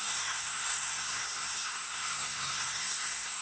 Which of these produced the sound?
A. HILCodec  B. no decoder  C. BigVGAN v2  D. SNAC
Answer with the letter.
D